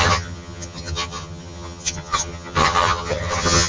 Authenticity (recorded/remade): remade